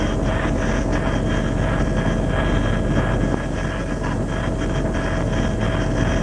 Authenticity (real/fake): real